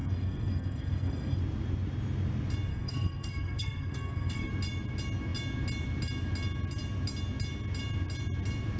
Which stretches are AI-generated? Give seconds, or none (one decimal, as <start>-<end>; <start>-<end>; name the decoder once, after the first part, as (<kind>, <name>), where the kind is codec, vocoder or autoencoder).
0.0-1.4 (codec, SNAC); 2.7-4.5